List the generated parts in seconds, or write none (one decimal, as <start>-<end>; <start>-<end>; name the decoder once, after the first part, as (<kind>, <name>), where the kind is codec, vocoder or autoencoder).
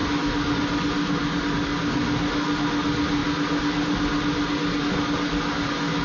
none